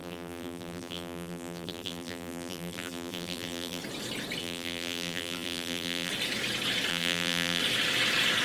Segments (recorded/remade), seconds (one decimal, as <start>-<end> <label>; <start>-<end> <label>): 0.0-3.8 remade; 3.8-4.4 recorded; 4.4-6.1 remade; 6.1-6.9 recorded; 6.9-7.6 remade; 7.6-8.4 recorded